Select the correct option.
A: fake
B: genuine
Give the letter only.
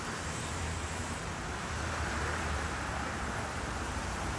A